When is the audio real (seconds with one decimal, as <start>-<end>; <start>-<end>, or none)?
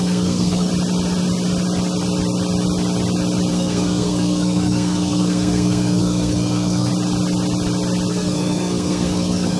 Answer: 0.7-3.5; 6.9-8.1